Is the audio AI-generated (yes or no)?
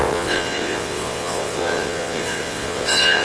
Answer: yes